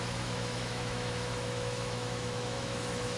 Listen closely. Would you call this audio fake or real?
fake